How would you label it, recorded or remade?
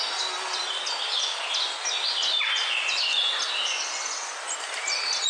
recorded